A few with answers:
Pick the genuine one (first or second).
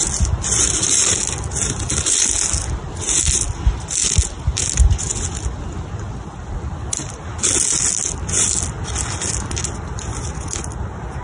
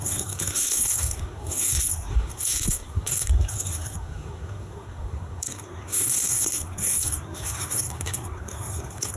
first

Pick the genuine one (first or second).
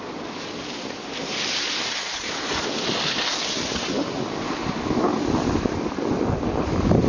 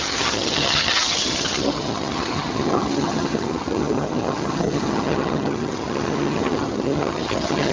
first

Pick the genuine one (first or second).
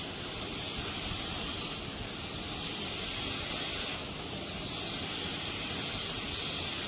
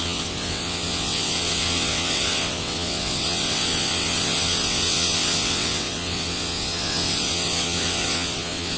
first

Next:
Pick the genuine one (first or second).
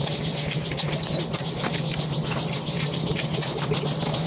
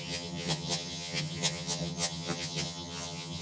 first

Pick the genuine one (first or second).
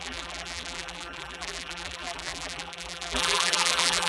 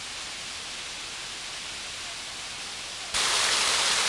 second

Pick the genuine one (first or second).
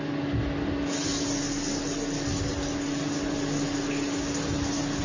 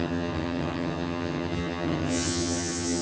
first